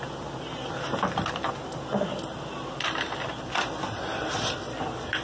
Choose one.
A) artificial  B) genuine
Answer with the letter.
B